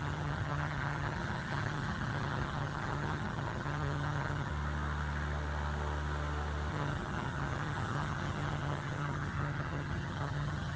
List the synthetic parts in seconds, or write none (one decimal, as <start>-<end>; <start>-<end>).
0.0-4.5; 6.7-10.8